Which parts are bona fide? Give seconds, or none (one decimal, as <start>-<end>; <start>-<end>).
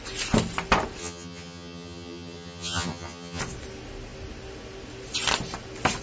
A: 0.0-1.0; 3.4-6.0